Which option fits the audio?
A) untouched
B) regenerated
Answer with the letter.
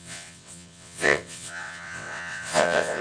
B